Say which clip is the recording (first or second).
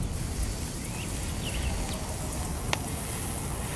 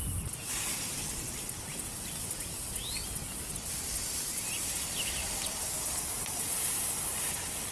first